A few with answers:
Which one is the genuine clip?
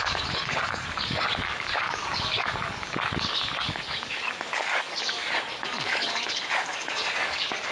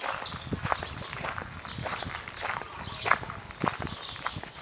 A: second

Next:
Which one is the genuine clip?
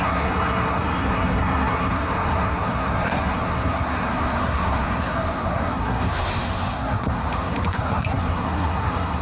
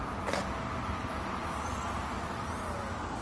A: second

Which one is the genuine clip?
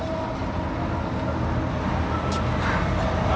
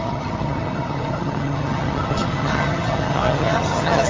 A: first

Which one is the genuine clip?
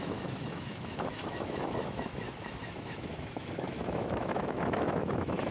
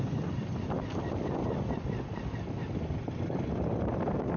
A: second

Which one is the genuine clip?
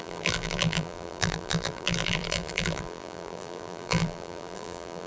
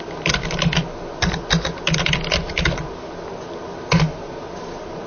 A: second